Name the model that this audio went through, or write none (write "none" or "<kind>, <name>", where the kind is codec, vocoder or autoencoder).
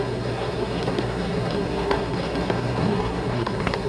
codec, SNAC